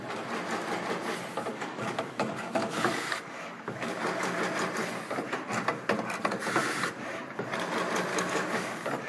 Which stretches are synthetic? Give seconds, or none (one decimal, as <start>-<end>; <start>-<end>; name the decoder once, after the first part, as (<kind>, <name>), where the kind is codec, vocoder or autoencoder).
1.5-4.4 (codec, DAC); 8.1-9.1